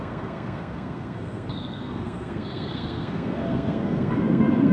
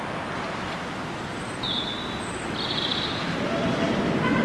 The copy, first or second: first